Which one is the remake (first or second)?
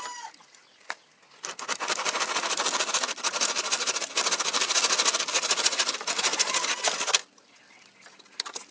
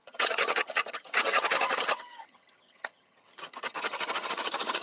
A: second